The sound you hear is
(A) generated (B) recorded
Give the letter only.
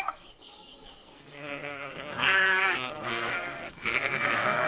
A